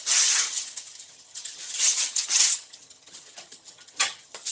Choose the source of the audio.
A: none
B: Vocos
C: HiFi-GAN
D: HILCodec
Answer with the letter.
C